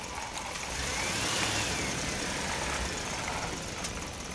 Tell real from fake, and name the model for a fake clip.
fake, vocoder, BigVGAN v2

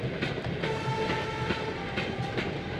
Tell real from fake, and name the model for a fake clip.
real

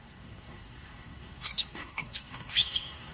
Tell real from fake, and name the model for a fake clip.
fake, codec, SNAC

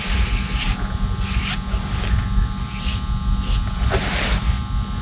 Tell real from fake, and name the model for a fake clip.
real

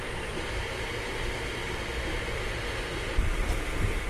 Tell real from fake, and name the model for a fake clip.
fake, vocoder, BigVGAN v2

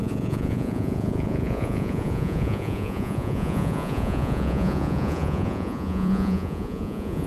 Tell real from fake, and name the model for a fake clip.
fake, vocoder, Vocos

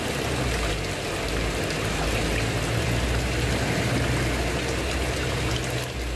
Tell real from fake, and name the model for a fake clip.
real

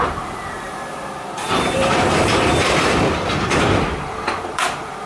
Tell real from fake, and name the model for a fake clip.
fake, vocoder, BigVGAN v2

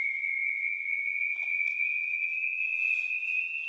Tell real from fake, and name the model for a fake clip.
fake, vocoder, Vocos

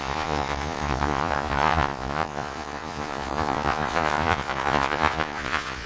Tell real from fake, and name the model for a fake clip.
fake, vocoder, Vocos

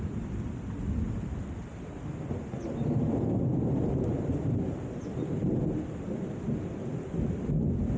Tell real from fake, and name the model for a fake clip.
real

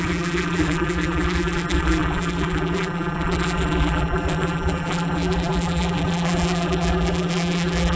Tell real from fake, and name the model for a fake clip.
fake, vocoder, BigVGAN v2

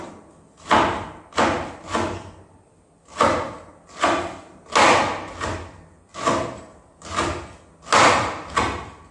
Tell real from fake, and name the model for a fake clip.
real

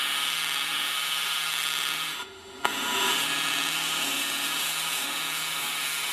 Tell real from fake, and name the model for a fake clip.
fake, autoencoder, DAC-VAE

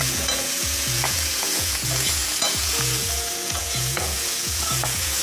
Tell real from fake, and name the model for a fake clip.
fake, vocoder, Vocos